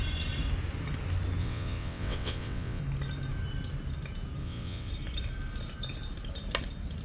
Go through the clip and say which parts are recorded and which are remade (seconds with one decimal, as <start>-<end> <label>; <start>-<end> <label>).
0.0-1.4 recorded; 1.4-2.8 remade; 2.8-4.4 recorded; 4.4-4.9 remade; 4.9-7.0 recorded